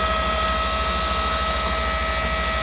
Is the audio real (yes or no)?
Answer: yes